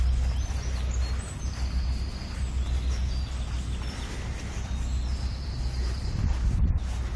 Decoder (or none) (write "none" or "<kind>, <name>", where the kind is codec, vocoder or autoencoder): none